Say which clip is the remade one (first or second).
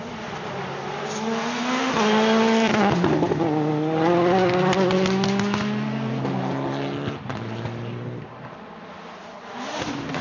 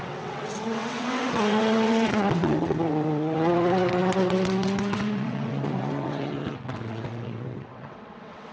second